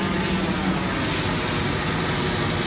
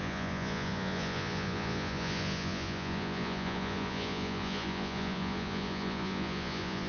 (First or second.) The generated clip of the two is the second